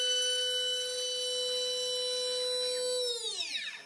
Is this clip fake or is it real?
real